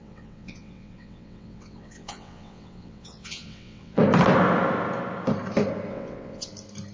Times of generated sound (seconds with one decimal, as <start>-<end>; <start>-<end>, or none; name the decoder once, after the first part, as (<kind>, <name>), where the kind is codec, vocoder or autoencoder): 0.0-4.0 (vocoder, WaveNeXt); 5.9-6.5